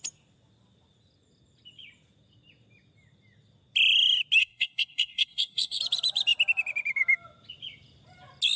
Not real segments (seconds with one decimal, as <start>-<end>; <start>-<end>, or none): 4.4-5.8